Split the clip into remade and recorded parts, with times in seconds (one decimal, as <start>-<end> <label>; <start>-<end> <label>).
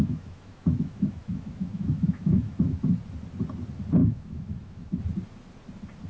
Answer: 0.0-2.8 remade; 2.8-4.0 recorded; 4.0-5.0 remade; 5.0-6.1 recorded